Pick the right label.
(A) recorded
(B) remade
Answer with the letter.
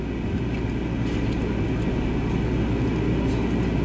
A